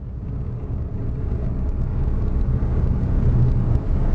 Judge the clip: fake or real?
fake